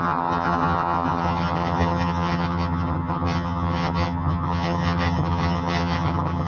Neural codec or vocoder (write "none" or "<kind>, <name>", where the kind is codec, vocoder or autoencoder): vocoder, HiFi-GAN